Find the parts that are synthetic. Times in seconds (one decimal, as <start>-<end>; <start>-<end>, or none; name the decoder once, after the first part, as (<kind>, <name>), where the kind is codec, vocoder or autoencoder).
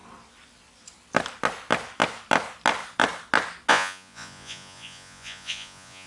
3.7-6.1 (vocoder, Vocos)